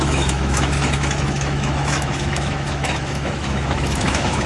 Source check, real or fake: fake